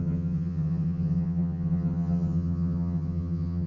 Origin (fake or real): fake